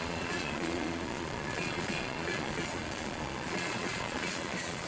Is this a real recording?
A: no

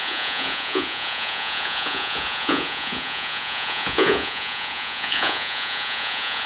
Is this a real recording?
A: no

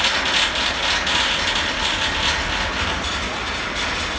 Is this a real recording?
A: yes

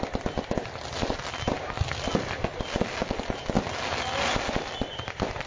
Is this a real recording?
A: yes